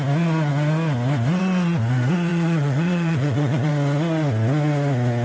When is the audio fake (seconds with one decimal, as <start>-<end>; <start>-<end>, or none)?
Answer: 2.3-3.7